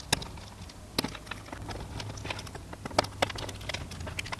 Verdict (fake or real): real